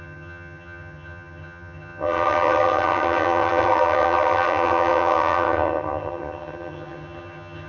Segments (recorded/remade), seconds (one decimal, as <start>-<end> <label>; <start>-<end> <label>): 0.0-7.7 remade